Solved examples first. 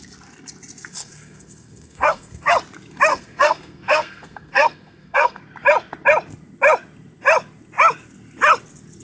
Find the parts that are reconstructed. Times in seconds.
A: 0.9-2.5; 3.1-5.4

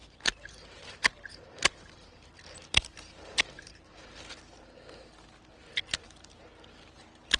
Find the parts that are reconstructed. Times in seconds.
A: 0.0-4.4

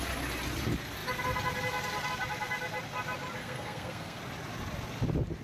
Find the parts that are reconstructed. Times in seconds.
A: 3.4-4.2

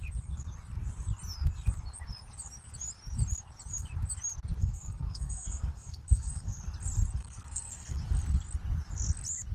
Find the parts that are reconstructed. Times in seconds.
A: 4.6-6.6; 7.2-8.0

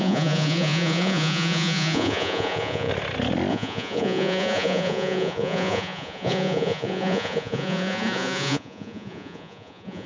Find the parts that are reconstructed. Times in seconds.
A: 0.0-2.9; 3.5-10.1

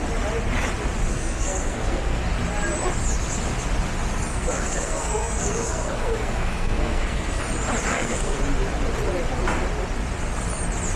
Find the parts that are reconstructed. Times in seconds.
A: 1.1-2.2; 4.3-7.4; 7.9-8.4

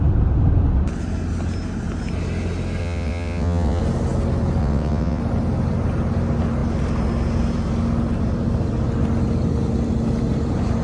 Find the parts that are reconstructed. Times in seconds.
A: 2.8-3.8; 4.6-5.2

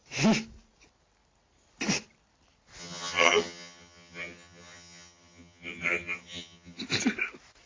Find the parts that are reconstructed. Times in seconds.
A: 2.8-6.8